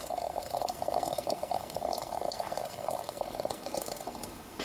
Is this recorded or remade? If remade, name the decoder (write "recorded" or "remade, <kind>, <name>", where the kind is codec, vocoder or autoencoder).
remade, codec, SNAC